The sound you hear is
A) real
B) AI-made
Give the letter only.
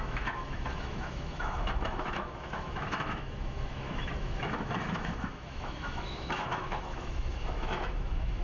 B